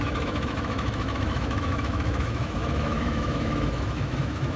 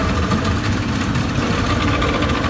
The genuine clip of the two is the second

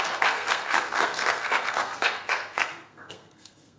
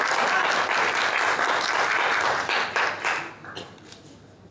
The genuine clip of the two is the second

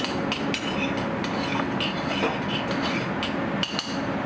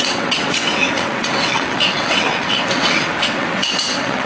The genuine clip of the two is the first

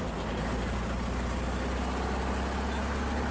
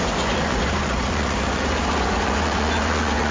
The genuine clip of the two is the first